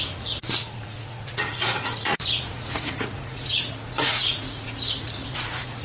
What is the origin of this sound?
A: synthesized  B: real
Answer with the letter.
A